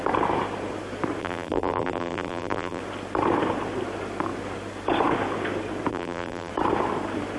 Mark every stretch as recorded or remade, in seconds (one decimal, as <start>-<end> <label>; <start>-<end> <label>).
0.0-1.2 recorded; 1.2-2.8 remade; 2.8-5.9 recorded; 5.9-6.5 remade; 6.5-7.4 recorded